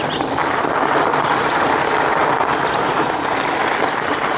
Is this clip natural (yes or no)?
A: yes